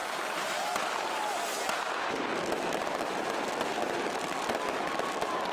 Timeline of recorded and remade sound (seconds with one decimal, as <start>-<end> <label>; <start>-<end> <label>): 0.0-5.5 recorded